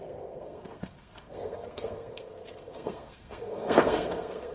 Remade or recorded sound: remade